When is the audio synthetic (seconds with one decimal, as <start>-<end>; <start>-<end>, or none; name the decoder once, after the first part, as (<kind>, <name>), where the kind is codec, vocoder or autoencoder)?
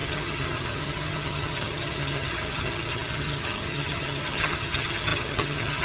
0.0-5.8 (vocoder, HiFi-GAN)